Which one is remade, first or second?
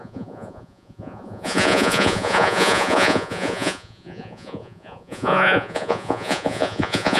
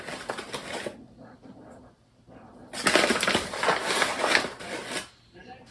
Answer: first